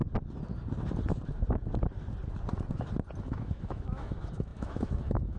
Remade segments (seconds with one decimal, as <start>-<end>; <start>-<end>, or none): 3.2-5.4